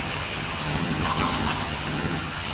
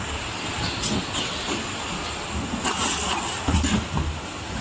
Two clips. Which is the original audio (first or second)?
second